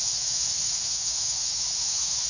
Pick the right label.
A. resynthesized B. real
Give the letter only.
A